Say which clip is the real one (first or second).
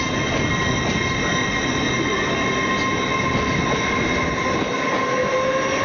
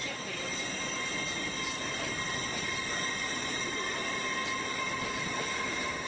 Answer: first